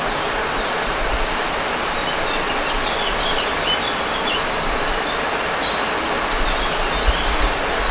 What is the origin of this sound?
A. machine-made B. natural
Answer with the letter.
B